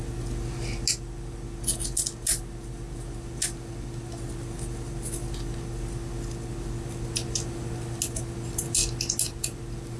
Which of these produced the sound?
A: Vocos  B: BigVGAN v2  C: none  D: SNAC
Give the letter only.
C